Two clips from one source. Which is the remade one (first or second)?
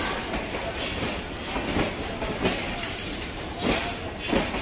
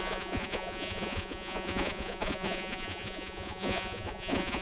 second